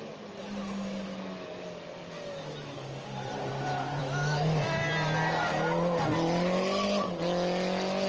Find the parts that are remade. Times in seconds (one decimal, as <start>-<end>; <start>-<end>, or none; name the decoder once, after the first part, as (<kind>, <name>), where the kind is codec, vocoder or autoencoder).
4.0-4.6 (autoencoder, DAC-VAE)